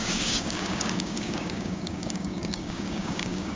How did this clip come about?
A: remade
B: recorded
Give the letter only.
A